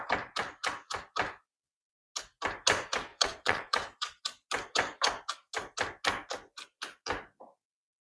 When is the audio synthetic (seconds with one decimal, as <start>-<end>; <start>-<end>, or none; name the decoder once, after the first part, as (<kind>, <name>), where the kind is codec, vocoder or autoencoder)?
3.1-4.2 (vocoder, Vocos)